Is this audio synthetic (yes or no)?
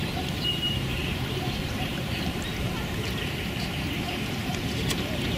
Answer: yes